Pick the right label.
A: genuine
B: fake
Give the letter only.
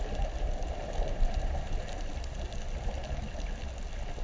A